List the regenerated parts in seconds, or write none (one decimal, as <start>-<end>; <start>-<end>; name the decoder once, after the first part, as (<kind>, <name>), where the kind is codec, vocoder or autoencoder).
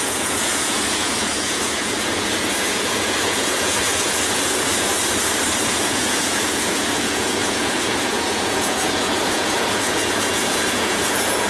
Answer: 0.0-4.9 (vocoder, Vocos); 5.7-11.5